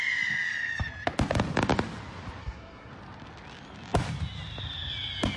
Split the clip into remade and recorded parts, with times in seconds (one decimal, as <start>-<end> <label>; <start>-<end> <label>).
0.0-2.4 recorded; 2.4-2.9 remade; 2.9-5.4 recorded